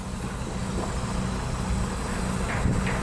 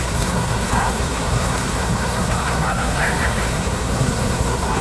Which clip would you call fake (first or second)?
second